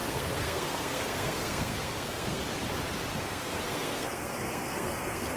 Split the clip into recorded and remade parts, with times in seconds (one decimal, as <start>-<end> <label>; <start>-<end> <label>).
0.0-2.4 remade; 2.4-3.1 recorded; 3.1-5.4 remade